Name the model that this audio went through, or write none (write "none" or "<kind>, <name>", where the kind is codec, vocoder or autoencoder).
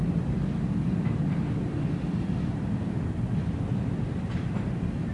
none